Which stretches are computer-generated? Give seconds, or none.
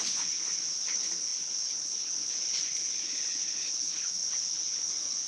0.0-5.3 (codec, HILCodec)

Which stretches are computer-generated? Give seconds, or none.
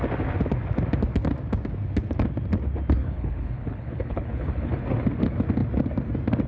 3.0-4.7 (codec, HILCodec)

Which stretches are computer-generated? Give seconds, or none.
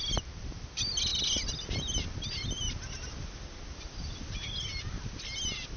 none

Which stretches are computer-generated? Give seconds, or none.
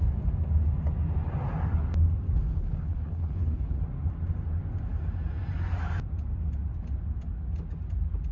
2.5-3.8 (codec, HILCodec)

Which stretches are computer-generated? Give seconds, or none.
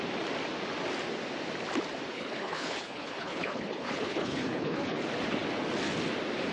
2.1-5.0 (codec, HILCodec)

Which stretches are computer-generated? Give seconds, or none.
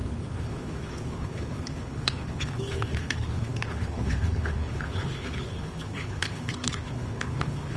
0.0-7.8 (codec, HILCodec)